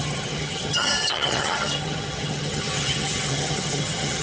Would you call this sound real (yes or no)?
no